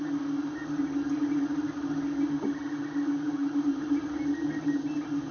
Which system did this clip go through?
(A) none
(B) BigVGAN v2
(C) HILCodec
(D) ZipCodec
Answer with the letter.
A